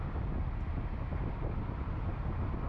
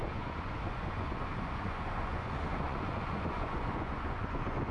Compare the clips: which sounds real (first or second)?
first